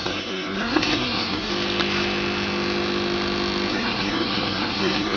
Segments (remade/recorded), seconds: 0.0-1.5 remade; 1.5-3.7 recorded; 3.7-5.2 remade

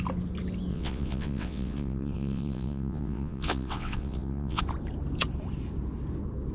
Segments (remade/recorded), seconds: 0.0-0.7 recorded; 0.7-4.6 remade; 4.6-6.5 recorded

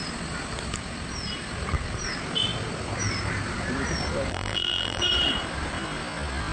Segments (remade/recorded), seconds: 0.0-4.3 recorded; 4.3-5.0 remade; 5.0-6.5 recorded